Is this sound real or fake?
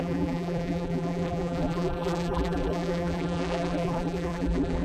fake